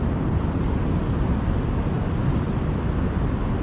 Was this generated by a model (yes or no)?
no